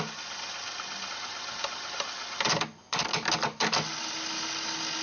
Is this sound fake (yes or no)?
no